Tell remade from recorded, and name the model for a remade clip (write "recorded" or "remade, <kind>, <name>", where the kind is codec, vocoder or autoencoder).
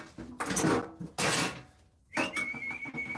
recorded